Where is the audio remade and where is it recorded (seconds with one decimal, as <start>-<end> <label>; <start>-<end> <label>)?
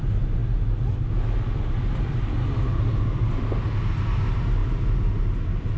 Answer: 0.0-5.8 recorded